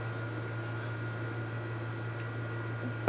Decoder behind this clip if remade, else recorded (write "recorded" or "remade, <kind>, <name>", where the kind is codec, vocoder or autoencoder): recorded